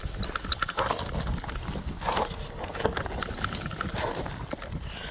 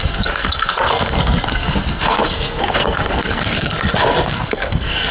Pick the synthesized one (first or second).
second